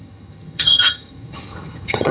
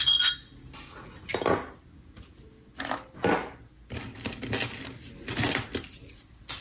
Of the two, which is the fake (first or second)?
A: first